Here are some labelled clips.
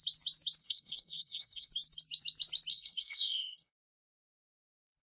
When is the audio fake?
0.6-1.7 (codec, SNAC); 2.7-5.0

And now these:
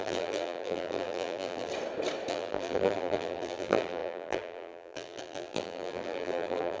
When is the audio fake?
0.0-1.7 (vocoder, BigVGAN v2); 2.3-6.8